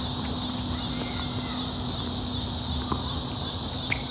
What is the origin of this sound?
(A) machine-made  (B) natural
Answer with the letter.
B